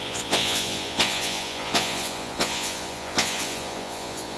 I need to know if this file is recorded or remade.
remade